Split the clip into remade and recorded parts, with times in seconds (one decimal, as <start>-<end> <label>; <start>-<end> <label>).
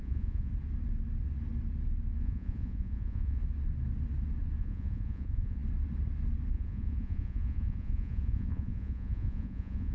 0.0-0.5 remade; 0.5-2.2 recorded; 2.2-3.4 remade; 3.4-4.6 recorded; 4.6-5.6 remade; 5.6-6.5 recorded; 6.5-9.9 remade